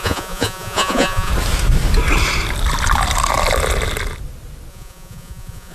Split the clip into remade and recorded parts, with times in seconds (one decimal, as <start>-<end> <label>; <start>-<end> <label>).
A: 0.0-1.3 remade; 1.3-4.7 recorded; 4.7-5.7 remade